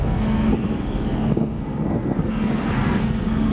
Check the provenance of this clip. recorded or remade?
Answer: remade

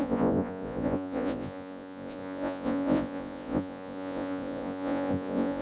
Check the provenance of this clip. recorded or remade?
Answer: remade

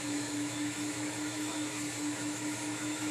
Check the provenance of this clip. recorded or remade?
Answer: remade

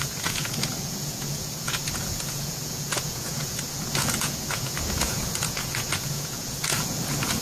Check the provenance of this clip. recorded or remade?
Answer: remade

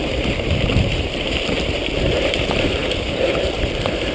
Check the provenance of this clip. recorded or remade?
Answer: remade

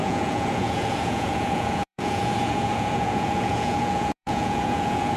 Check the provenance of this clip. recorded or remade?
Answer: remade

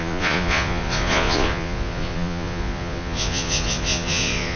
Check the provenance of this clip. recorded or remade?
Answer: remade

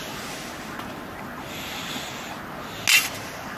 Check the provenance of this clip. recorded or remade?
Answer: recorded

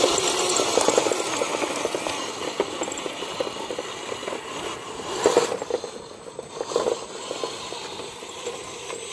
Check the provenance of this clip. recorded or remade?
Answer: recorded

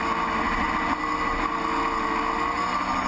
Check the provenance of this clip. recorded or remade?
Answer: recorded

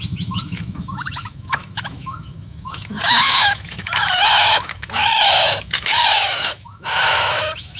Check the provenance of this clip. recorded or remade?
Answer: remade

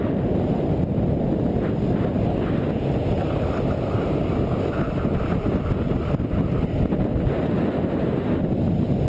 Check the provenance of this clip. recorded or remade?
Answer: recorded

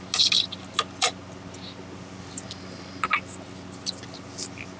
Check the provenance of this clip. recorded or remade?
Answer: recorded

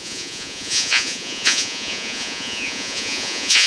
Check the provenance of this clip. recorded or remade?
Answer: remade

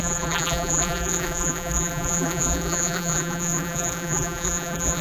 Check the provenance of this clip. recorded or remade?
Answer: remade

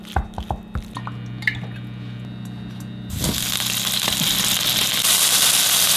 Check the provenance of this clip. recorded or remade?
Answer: recorded